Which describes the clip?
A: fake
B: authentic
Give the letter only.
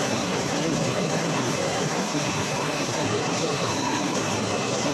A